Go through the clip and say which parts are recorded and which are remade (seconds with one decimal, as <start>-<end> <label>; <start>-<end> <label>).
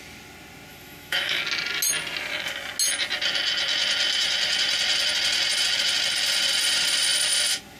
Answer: 0.0-0.7 recorded; 0.7-1.4 remade; 1.4-7.8 recorded